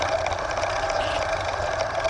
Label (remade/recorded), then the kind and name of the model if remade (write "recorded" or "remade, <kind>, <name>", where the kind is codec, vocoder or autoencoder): recorded